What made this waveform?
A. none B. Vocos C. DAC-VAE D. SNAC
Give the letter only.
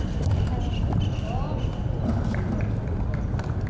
A